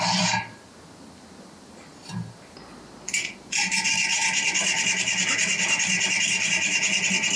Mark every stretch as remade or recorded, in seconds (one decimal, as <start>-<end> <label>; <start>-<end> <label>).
0.0-7.4 recorded